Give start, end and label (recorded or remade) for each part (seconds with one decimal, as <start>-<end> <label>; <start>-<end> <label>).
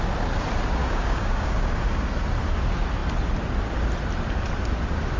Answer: 0.0-0.8 recorded; 0.8-2.1 remade; 2.1-5.2 recorded